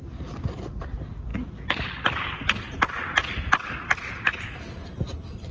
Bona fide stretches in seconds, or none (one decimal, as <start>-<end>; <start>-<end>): 0.0-5.5